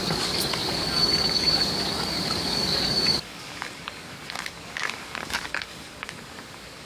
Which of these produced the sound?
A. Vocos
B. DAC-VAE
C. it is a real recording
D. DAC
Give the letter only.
D